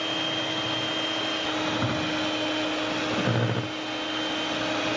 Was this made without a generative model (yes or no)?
yes